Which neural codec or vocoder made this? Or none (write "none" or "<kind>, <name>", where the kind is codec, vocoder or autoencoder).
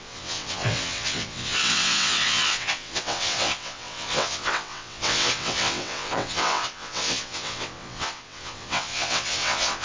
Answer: vocoder, WaveNeXt